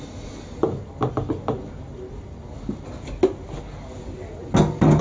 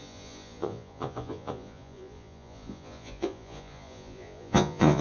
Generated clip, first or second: second